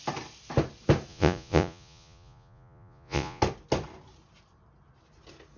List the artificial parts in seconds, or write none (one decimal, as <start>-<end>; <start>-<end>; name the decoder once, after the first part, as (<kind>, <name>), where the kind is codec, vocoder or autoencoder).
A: 1.1-3.4 (vocoder, Vocos)